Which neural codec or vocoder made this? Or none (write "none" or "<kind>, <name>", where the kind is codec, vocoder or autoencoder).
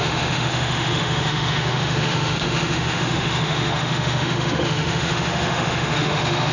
autoencoder, DAC-VAE